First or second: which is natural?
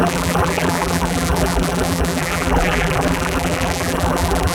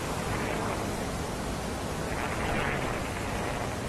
second